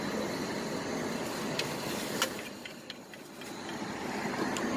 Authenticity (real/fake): real